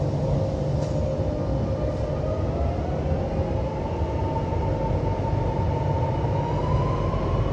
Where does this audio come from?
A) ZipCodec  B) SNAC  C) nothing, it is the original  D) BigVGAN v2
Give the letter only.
C